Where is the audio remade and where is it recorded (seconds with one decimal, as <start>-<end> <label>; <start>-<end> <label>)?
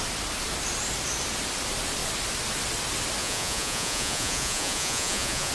0.0-3.2 recorded; 3.2-5.5 remade